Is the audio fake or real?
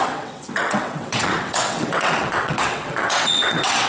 fake